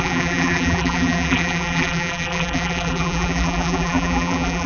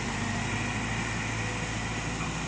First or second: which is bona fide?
second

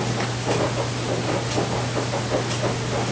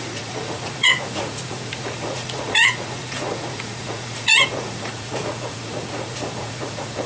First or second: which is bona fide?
first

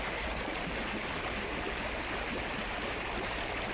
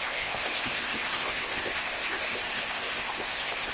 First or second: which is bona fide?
first